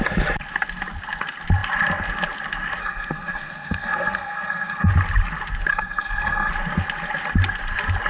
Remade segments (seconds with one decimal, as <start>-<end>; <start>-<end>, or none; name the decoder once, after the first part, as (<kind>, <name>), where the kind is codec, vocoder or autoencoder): 2.8-4.9 (codec, SNAC); 5.7-6.5